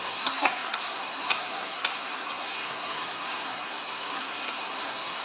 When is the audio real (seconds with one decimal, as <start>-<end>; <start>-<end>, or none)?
none